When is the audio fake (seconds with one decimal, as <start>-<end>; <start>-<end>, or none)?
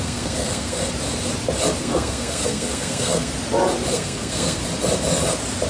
0.0-0.8; 1.8-3.3; 3.9-4.6